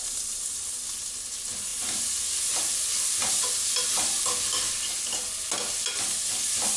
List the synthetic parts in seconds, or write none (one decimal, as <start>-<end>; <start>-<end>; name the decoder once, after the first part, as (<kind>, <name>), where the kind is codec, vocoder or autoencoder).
none